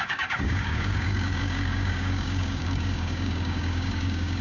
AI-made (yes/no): yes